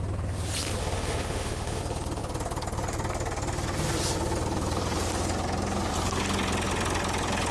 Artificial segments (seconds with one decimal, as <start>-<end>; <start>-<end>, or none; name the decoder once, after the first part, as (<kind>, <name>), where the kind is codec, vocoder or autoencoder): 0.8-1.8 (autoencoder, DAC-VAE)